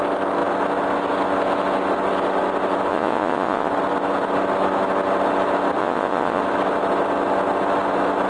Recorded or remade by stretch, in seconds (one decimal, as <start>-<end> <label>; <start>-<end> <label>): 0.0-2.9 recorded; 2.9-3.7 remade; 3.7-5.8 recorded; 5.8-6.4 remade; 6.4-8.3 recorded